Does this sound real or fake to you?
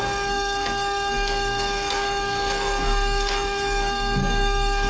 fake